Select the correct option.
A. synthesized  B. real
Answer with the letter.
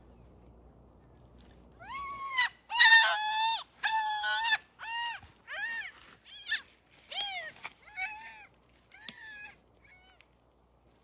B